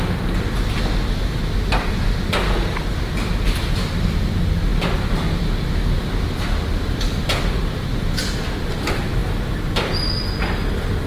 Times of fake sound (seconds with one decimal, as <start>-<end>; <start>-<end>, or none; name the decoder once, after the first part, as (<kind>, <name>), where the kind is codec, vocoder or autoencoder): none